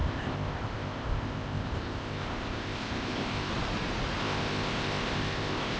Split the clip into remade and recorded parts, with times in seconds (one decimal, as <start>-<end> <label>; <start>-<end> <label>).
0.0-3.5 remade; 3.5-4.2 recorded; 4.2-5.8 remade